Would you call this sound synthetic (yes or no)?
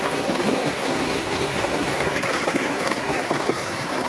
yes